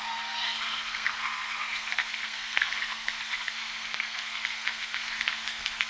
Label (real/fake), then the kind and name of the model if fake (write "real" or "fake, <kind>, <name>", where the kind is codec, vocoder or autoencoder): fake, codec, SNAC